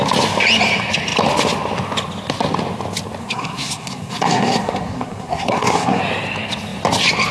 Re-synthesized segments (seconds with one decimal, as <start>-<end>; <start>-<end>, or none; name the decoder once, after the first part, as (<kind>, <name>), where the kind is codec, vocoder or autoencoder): 3.2-6.0 (codec, SNAC)